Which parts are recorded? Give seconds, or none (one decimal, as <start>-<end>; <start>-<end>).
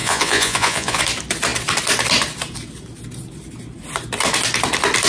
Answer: 1.0-5.1